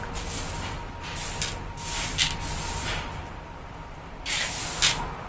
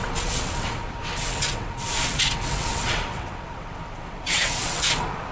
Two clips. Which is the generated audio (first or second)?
second